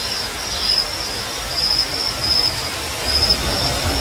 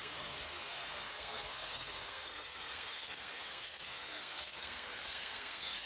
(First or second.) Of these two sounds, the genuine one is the first